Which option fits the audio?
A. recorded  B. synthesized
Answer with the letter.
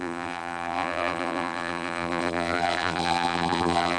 B